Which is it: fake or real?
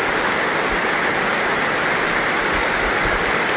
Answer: real